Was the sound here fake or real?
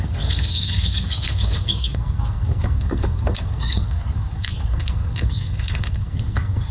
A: fake